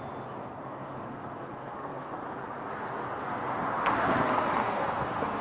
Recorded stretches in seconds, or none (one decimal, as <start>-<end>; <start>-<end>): 0.0-0.4; 2.2-4.6

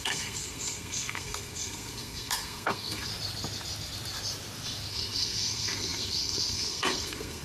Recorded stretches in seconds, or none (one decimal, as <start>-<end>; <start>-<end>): 3.1-4.9

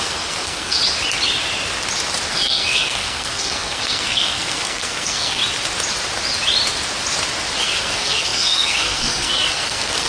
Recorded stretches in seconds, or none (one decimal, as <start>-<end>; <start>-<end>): 0.8-2.3; 5.4-7.6

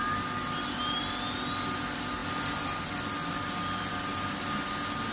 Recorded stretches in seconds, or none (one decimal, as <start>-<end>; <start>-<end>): 0.0-5.1

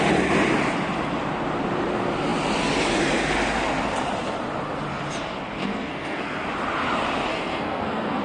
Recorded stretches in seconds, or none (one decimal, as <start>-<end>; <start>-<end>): 0.0-5.6; 6.5-7.3